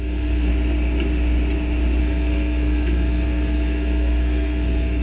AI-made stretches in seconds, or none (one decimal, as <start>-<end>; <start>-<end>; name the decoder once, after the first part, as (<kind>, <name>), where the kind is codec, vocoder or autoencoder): 0.0-0.5 (codec, SNAC); 2.0-5.0